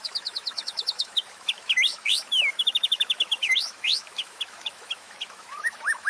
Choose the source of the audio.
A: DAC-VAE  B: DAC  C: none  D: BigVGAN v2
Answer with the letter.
A